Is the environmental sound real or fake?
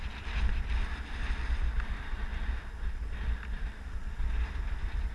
real